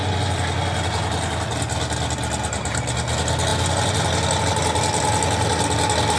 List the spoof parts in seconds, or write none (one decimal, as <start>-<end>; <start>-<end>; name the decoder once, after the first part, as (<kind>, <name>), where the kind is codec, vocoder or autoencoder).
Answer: none